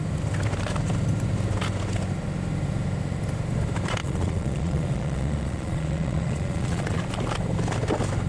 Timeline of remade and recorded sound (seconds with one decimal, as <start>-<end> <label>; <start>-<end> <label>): 0.0-4.0 recorded; 4.0-7.0 remade; 7.0-8.3 recorded